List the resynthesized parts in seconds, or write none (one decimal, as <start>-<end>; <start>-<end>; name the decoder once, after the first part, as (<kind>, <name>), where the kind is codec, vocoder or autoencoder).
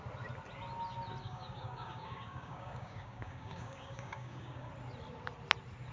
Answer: 1.2-4.7 (codec, DAC)